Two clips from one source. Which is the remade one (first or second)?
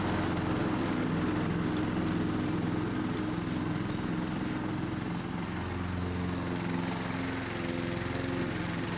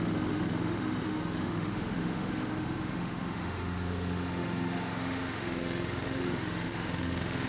second